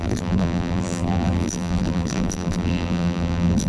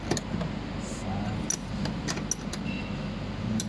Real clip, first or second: second